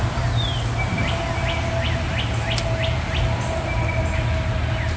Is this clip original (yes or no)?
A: yes